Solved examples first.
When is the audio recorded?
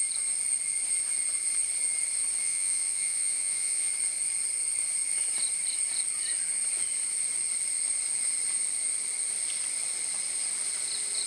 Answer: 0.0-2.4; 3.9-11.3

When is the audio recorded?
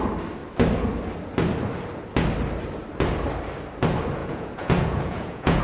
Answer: 0.0-4.2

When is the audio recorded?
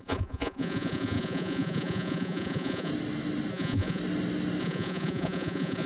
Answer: 2.9-3.5; 4.0-4.6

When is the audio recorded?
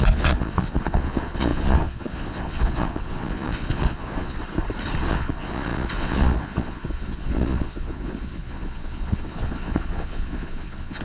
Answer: 4.4-5.0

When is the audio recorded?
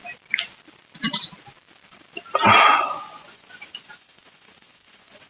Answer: 0.0-2.6